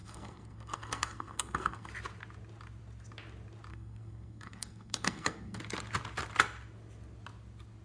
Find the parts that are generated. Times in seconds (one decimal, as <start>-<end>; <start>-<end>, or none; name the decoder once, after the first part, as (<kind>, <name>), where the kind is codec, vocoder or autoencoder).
0.0-1.9 (codec, SNAC); 3.7-5.6